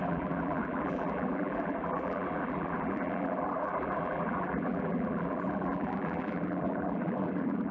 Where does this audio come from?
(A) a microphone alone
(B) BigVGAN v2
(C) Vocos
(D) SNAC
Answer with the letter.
B